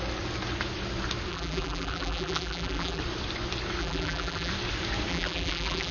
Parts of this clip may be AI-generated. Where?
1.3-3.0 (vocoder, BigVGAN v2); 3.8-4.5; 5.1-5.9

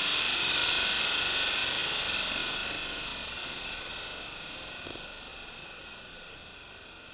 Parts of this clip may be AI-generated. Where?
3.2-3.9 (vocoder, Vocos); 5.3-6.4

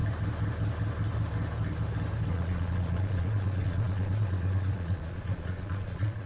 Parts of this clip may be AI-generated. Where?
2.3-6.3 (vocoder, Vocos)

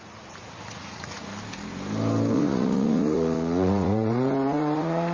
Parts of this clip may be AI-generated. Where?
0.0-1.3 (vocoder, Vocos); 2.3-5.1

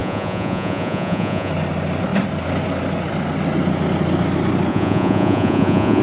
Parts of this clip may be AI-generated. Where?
0.0-1.5 (vocoder, Vocos); 4.7-6.0